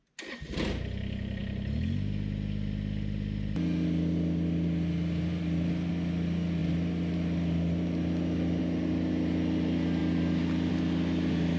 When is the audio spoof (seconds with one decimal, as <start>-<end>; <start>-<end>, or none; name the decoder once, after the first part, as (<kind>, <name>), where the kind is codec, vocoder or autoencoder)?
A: none

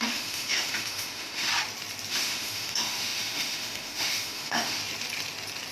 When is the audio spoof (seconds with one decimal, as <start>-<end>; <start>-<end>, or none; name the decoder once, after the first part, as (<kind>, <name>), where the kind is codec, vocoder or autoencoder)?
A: 0.0-1.5 (autoencoder, DAC-VAE); 2.1-4.8

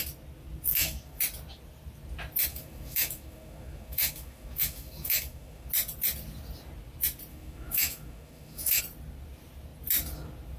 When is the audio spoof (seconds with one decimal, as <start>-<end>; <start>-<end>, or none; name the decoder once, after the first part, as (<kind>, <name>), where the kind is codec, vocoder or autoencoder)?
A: 0.7-1.2 (autoencoder, DAC-VAE); 2.5-5.7; 7.3-8.8

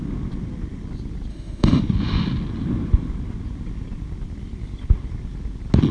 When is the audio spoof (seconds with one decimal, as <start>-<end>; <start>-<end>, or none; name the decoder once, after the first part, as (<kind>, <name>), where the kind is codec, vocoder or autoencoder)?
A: 1.3-1.8 (autoencoder, DAC-VAE)

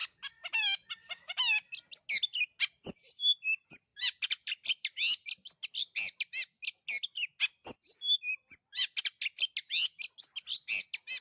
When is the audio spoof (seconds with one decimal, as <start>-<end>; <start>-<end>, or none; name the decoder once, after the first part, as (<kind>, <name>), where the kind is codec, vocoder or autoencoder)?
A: none

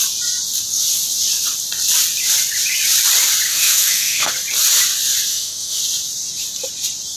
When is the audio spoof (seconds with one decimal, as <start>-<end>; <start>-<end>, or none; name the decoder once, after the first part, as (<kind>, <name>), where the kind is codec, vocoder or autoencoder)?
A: 3.5-4.3 (autoencoder, DAC-VAE); 5.3-5.8